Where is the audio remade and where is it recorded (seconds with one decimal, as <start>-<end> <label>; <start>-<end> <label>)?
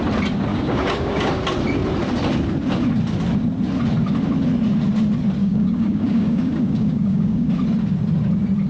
0.0-0.5 recorded; 0.5-1.3 remade; 1.3-5.4 recorded; 5.4-7.5 remade; 7.5-8.7 recorded